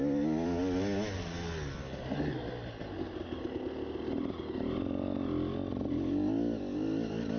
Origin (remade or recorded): recorded